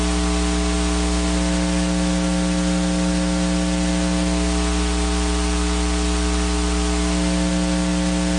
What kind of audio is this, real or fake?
real